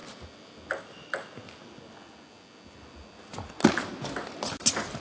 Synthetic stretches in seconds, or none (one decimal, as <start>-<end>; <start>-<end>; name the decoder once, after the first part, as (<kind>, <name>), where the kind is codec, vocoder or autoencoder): none